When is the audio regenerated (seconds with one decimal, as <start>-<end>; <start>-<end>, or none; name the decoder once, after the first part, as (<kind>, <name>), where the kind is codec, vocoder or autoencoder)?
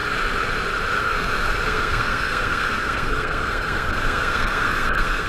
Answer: 1.0-5.3 (codec, SNAC)